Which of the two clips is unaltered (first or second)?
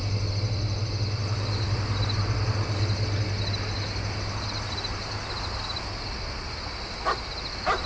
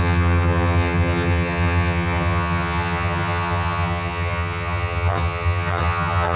first